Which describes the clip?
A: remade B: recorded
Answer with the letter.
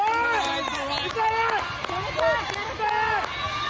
B